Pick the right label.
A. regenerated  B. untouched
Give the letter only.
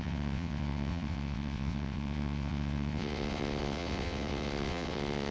A